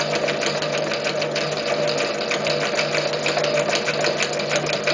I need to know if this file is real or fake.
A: real